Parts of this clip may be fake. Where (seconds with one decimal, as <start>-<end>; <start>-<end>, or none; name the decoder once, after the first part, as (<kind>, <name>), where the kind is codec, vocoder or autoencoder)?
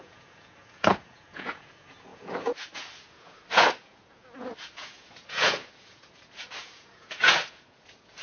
0.0-8.2 (vocoder, Vocos)